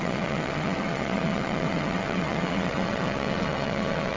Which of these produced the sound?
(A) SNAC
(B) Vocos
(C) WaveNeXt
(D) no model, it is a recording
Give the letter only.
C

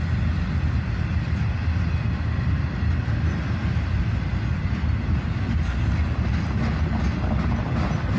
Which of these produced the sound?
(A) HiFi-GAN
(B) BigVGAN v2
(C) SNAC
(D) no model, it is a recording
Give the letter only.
D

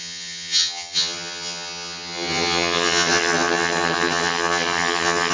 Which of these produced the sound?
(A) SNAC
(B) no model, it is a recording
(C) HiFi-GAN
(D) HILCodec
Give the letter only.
C